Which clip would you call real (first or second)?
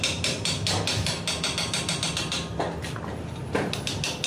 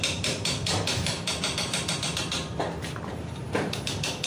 first